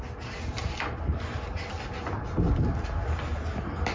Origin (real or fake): real